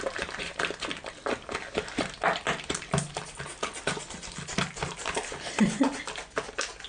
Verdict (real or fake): real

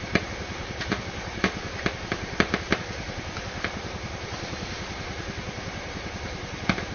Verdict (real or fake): fake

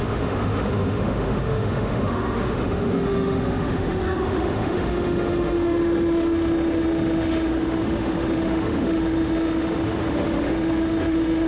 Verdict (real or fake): fake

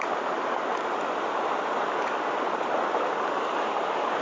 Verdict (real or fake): real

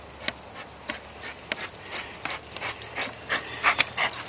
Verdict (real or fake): real